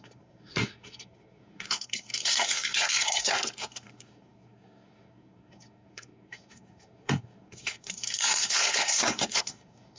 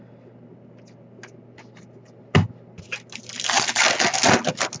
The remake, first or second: first